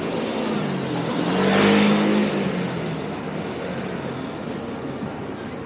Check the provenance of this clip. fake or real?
real